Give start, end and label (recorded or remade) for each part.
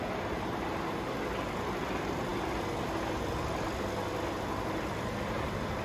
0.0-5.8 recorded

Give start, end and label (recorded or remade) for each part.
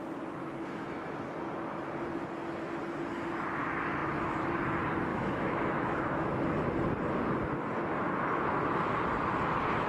0.0-0.4 recorded; 0.4-1.1 remade; 1.1-5.1 recorded; 5.1-6.3 remade; 6.3-9.9 recorded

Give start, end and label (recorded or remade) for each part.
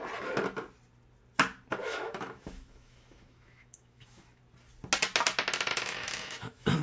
0.0-1.8 recorded; 1.8-4.4 remade; 4.4-5.7 recorded; 5.7-6.8 remade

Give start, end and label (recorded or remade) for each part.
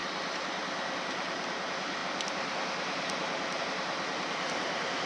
0.0-5.1 recorded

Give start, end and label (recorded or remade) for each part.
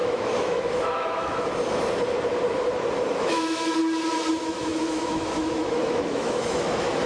0.0-1.5 remade; 1.5-3.2 recorded; 3.2-3.8 remade; 3.8-4.3 recorded; 4.3-7.1 remade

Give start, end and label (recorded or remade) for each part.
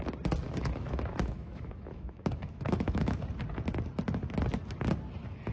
0.0-0.6 recorded; 0.6-3.2 remade; 3.2-5.5 recorded